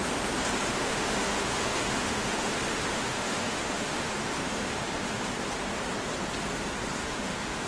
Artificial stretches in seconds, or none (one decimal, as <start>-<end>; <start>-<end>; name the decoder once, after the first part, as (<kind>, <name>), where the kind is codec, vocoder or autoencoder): 0.7-5.3 (autoencoder, DAC-VAE); 7.0-7.7